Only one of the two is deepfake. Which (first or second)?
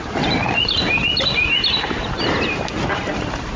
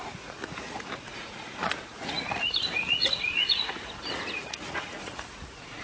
second